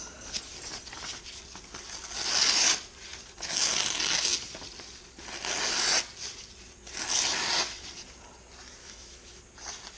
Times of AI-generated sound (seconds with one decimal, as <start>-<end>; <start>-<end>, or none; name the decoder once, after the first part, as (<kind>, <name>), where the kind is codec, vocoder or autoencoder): 8.8-9.4 (autoencoder, DAC-VAE)